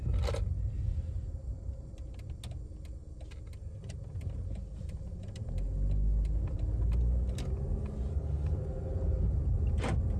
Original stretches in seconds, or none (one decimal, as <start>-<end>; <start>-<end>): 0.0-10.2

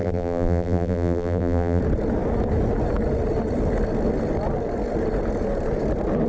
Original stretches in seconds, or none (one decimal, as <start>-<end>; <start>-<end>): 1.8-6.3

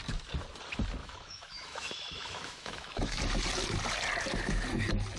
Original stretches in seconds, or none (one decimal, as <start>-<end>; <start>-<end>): 0.0-1.0; 3.2-5.2

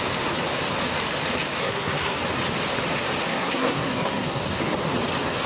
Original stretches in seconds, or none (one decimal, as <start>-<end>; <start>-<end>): 0.0-1.6; 2.2-3.3; 4.6-5.5

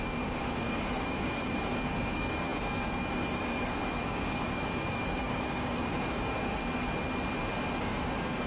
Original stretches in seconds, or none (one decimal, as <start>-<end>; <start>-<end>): 6.6-7.8

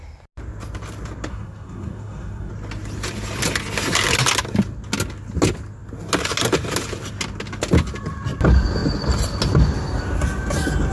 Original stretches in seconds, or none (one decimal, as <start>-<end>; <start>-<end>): 0.0-1.3; 2.5-10.9

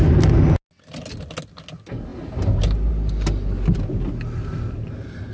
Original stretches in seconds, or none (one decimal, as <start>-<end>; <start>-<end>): 0.0-5.3

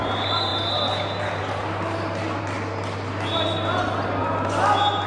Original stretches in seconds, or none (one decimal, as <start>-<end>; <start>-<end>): 0.0-5.1